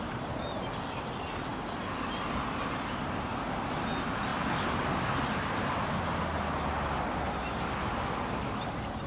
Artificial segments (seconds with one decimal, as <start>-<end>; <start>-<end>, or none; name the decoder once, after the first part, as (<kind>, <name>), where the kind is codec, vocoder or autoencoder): none